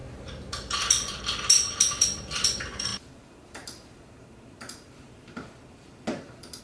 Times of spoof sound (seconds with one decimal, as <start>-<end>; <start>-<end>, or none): 0.0-6.6